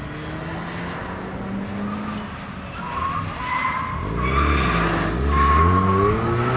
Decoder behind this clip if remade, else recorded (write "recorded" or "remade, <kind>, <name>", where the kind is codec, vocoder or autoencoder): recorded